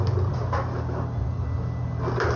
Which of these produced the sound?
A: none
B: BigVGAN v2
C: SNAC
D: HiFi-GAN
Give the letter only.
A